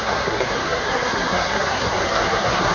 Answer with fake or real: fake